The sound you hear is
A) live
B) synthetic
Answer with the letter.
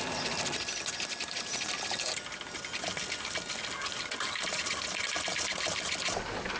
A